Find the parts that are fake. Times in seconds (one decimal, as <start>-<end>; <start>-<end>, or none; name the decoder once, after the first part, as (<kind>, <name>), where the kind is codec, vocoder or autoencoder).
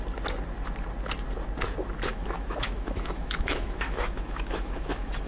2.1-5.3 (autoencoder, DAC-VAE)